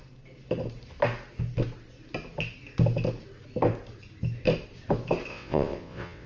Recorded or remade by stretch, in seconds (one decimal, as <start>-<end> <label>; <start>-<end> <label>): 0.0-5.3 recorded; 5.3-6.3 remade